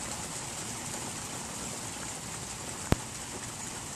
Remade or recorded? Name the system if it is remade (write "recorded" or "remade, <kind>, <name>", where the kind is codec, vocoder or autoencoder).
recorded